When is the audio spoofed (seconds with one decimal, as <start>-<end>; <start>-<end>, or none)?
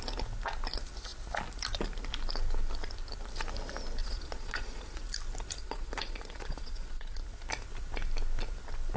4.0-5.0; 5.6-7.2